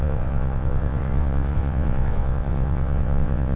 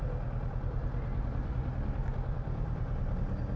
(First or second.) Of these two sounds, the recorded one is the second